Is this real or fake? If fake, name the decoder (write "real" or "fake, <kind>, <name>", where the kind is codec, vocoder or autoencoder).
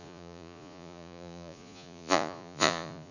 fake, vocoder, Vocos